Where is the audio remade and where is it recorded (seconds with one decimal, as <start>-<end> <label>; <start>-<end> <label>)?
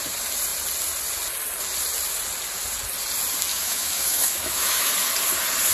0.0-3.5 recorded; 3.5-4.9 remade; 4.9-5.7 recorded